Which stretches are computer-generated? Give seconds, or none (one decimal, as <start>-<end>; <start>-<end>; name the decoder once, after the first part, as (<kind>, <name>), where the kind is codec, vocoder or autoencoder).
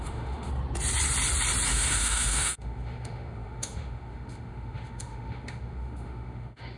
0.0-0.5 (autoencoder, DAC-VAE); 1.7-6.8